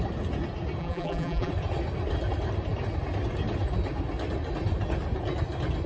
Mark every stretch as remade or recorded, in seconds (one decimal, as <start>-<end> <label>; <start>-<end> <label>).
0.0-0.8 recorded; 0.8-1.5 remade; 1.5-5.9 recorded